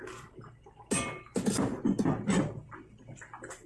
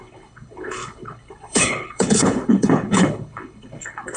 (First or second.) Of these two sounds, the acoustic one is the first